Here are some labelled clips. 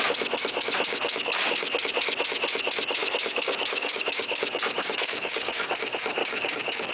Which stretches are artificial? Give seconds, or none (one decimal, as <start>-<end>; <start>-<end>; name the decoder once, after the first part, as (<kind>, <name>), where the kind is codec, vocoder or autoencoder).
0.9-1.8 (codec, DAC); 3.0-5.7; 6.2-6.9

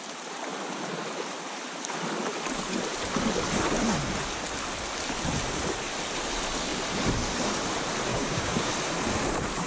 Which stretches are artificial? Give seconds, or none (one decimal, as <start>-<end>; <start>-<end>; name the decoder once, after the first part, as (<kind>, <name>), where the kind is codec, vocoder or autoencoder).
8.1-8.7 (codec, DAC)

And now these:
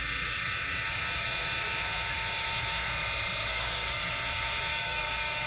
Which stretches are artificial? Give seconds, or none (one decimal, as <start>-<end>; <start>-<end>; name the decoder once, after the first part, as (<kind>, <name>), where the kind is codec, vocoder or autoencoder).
3.4-4.1 (codec, DAC); 4.7-5.5

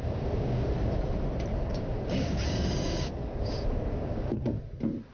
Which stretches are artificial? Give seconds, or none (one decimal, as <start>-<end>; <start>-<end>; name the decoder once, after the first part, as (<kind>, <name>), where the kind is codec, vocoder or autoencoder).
0.0-0.7 (codec, DAC); 1.5-4.6

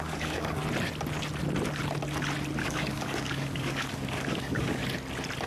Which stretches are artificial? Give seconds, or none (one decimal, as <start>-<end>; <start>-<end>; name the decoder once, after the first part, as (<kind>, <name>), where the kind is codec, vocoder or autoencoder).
0.0-0.6 (codec, DAC); 2.6-4.8

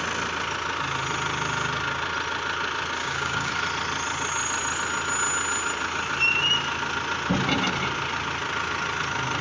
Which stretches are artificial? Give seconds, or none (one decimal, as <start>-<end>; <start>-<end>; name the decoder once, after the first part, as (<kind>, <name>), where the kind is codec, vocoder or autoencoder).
3.0-3.5 (codec, DAC)